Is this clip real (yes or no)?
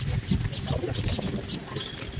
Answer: no